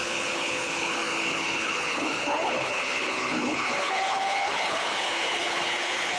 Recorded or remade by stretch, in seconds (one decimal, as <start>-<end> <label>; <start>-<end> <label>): 0.0-6.2 remade